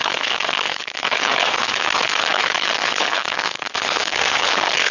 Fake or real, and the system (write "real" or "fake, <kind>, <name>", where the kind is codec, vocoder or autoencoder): fake, codec, HILCodec